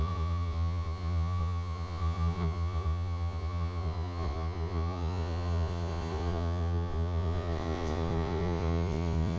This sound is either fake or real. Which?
fake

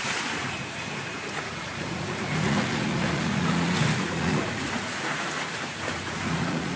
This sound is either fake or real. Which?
fake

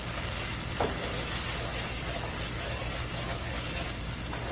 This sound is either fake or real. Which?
real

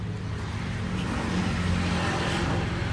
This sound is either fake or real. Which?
real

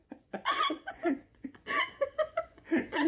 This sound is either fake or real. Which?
fake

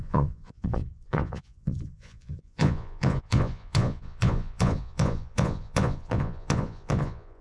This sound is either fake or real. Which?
fake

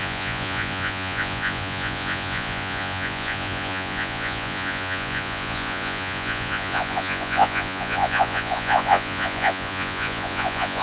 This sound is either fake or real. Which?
fake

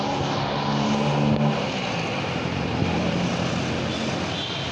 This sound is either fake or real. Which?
real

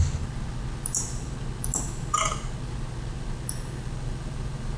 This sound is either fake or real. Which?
real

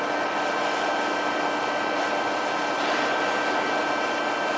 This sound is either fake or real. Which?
real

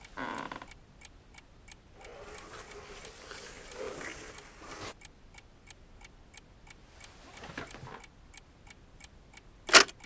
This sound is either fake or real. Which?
real